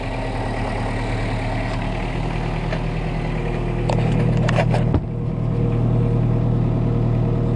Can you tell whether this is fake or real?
real